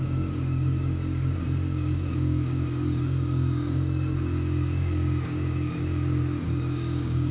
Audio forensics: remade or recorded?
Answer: remade